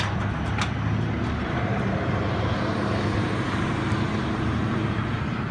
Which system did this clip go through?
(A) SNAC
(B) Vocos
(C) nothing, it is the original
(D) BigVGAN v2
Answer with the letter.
C